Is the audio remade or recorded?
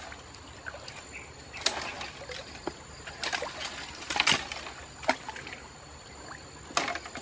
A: recorded